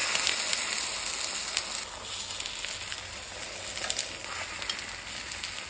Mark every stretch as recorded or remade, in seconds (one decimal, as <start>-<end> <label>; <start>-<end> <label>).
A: 0.0-5.7 recorded